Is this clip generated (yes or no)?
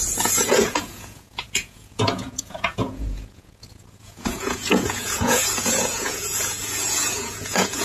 yes